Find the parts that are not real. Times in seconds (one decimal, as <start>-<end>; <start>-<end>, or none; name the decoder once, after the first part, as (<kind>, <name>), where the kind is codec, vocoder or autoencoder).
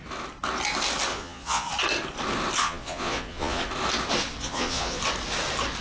1.1-1.7 (vocoder, Vocos); 2.6-3.6; 4.4-5.0